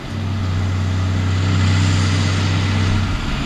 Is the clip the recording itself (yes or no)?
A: yes